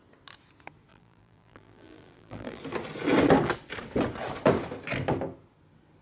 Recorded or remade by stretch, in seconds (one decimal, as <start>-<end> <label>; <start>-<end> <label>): 0.0-0.9 recorded; 0.9-2.6 remade; 2.6-6.0 recorded